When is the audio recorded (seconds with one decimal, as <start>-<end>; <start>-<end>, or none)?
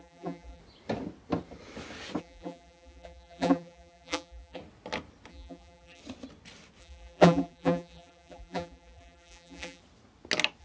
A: 0.6-2.2; 4.6-5.3; 6.0-6.8; 9.8-10.6